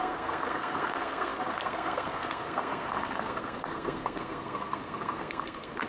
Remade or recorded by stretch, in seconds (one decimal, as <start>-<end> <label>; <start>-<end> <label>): 0.0-5.9 remade